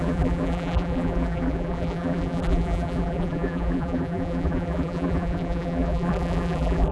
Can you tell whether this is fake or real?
fake